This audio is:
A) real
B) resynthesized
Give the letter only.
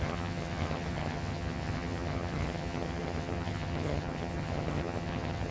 B